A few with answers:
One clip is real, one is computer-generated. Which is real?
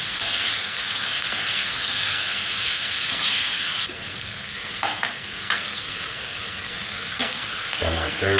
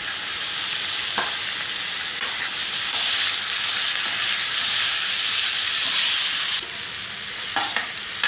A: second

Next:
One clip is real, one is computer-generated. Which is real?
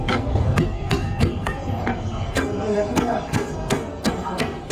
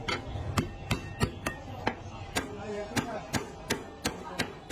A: second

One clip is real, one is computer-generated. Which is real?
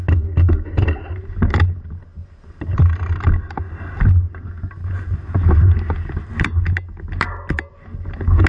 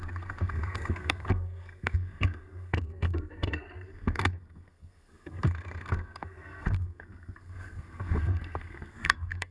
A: first